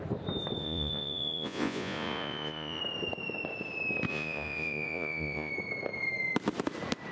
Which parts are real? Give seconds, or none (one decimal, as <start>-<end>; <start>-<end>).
0.0-0.6; 2.8-4.1; 5.5-7.1